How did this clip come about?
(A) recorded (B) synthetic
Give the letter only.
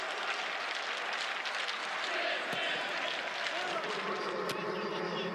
A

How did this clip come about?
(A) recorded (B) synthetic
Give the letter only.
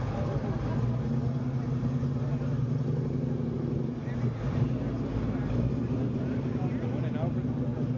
A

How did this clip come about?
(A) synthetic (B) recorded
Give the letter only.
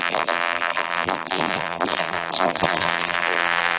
A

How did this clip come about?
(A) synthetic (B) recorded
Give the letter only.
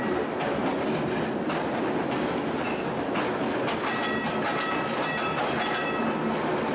B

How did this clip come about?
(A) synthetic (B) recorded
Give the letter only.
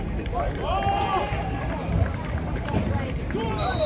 A